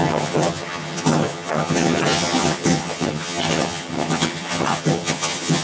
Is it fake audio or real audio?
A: fake